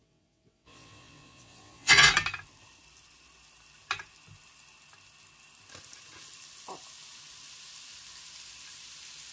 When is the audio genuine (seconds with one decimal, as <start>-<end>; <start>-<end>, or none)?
2.1-9.3